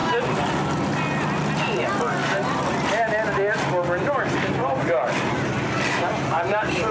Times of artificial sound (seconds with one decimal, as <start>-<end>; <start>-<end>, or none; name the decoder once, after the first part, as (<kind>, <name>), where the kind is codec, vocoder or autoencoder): 2.2-3.1 (vocoder, BigVGAN v2)